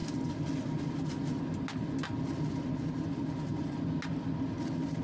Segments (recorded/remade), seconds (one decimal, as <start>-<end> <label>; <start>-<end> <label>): 0.0-5.0 recorded